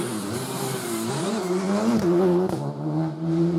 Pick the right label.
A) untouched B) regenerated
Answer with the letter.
A